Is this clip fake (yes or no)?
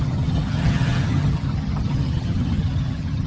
yes